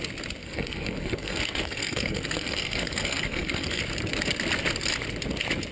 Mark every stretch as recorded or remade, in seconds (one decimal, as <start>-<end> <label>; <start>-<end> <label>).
0.0-0.4 recorded; 0.4-3.8 remade; 3.8-5.7 recorded